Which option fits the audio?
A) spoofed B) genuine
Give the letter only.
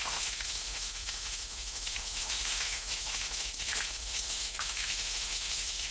A